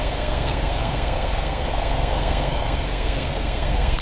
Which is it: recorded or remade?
remade